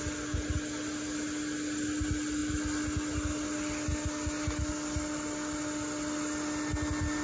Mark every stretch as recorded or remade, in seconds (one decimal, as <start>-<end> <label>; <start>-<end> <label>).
0.0-7.2 recorded